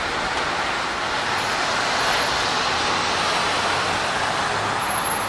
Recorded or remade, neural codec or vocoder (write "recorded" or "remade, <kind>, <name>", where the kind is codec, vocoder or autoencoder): recorded